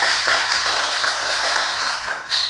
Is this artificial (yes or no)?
yes